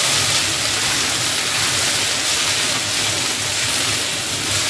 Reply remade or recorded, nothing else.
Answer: recorded